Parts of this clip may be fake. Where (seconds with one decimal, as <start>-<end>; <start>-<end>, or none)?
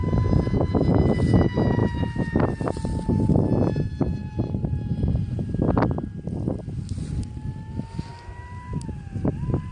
4.2-5.6